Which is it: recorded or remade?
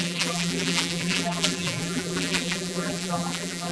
remade